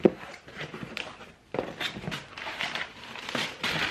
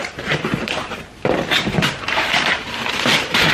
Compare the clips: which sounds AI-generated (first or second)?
second